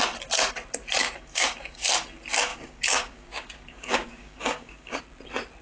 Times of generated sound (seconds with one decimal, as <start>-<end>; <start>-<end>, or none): 1.0-1.9; 2.5-5.0